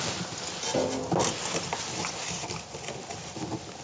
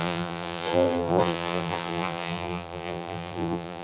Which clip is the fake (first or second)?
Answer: second